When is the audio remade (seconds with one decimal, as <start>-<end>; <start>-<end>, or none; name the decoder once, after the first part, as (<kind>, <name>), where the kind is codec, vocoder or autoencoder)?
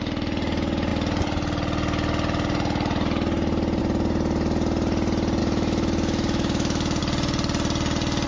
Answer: 5.4-7.0 (autoencoder, DAC-VAE)